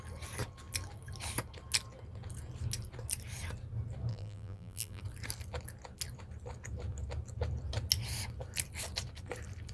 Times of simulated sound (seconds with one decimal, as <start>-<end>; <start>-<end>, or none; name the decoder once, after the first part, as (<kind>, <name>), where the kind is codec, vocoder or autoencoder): 4.1-5.0 (vocoder, BigVGAN v2)